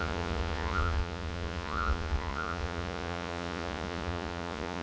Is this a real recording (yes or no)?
no